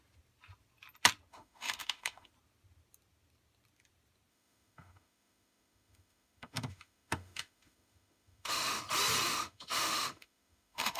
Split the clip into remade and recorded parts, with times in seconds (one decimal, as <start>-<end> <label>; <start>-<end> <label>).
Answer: 0.0-1.3 recorded; 1.3-2.3 remade; 2.3-4.3 recorded; 4.3-8.8 remade; 8.8-9.3 recorded; 9.3-11.0 remade